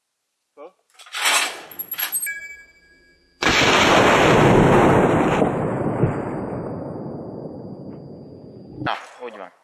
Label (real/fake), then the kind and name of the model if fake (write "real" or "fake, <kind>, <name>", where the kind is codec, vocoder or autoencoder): real